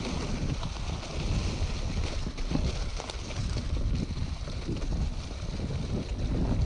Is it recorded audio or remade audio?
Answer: recorded